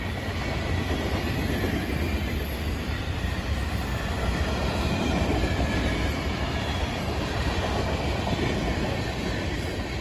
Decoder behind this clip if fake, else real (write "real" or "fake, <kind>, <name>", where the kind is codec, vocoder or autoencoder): real